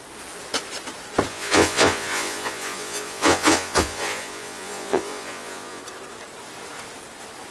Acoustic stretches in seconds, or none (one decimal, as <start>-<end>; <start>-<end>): 0.0-1.3; 5.8-7.5